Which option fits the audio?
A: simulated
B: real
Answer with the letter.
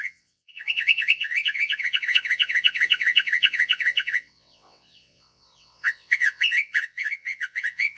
A